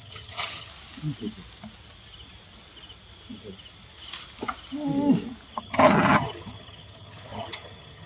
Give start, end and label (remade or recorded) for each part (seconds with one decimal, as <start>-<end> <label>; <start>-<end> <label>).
0.0-0.7 remade; 0.7-5.6 recorded; 5.6-8.1 remade